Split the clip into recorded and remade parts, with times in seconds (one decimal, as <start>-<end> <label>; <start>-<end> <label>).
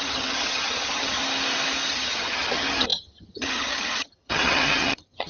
0.0-1.2 remade; 1.2-1.9 recorded; 1.9-5.3 remade